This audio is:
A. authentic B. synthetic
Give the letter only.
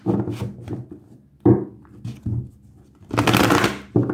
A